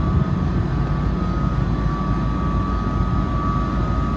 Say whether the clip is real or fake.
real